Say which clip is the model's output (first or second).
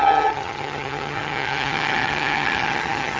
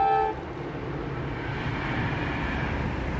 first